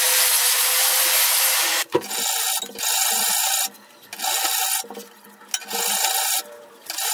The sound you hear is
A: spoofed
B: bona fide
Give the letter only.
B